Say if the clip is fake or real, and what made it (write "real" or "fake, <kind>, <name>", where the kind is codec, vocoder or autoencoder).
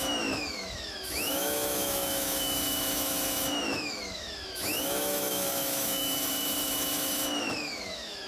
fake, autoencoder, DAC-VAE